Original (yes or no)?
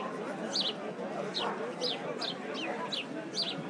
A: yes